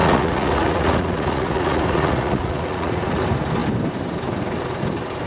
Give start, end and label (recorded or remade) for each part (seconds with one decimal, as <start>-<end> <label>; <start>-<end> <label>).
0.0-3.2 remade; 3.2-5.3 recorded